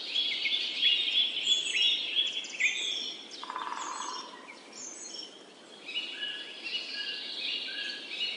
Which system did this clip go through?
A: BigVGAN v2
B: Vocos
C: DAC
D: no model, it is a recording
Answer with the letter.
D